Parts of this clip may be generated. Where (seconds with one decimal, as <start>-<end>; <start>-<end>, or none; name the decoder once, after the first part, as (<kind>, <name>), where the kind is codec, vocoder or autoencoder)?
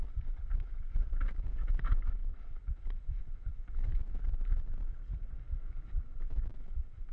0.0-7.1 (vocoder, BigVGAN v2)